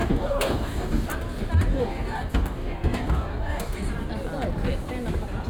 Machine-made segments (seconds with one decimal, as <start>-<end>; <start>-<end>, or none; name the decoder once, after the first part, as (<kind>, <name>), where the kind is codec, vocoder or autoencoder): 0.0-1.1 (codec, DAC); 1.7-3.9